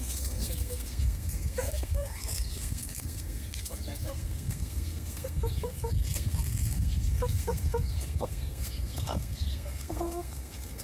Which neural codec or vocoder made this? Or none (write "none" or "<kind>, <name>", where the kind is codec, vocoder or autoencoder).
codec, SNAC